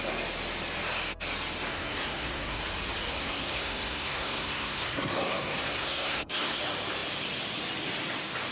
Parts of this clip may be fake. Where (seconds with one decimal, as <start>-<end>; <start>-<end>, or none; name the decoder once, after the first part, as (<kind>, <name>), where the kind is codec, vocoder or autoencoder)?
1.7-2.6 (codec, SNAC); 3.1-6.6